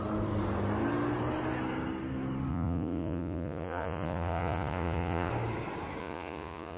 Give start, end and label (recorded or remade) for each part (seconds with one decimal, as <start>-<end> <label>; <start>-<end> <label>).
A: 0.0-2.5 recorded; 2.5-5.3 remade; 5.3-6.0 recorded; 6.0-6.8 remade